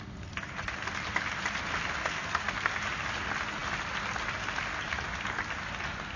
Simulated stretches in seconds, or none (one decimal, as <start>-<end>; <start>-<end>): 2.0-2.7